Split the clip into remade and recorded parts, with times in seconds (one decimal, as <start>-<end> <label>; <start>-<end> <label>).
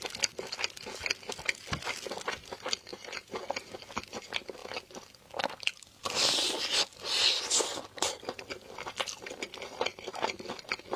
0.0-2.9 recorded; 2.9-3.4 remade; 3.4-11.0 recorded